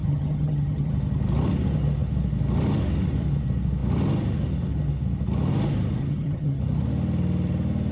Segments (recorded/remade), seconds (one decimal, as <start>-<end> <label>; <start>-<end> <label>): 0.0-0.9 remade; 0.9-6.0 recorded; 6.0-6.6 remade; 6.6-7.9 recorded